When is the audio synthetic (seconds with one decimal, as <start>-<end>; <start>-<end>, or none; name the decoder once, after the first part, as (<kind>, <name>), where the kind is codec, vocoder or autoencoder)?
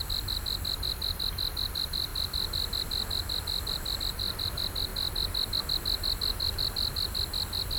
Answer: none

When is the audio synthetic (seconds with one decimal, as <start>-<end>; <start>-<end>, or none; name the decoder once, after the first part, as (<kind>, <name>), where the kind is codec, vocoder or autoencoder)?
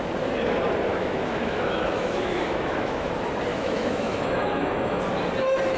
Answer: 0.9-3.1 (autoencoder, DAC-VAE); 3.5-5.0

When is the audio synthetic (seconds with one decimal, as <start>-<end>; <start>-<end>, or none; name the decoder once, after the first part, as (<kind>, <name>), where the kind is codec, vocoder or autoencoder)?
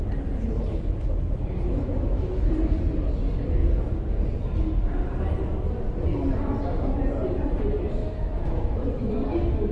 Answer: 0.7-2.5 (autoencoder, DAC-VAE); 8.0-9.1